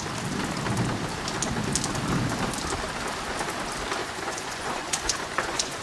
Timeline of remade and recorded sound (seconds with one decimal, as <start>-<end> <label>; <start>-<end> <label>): 0.0-4.0 recorded; 4.0-5.8 remade

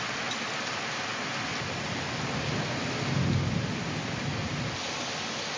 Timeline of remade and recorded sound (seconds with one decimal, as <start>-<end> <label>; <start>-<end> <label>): 0.0-5.6 recorded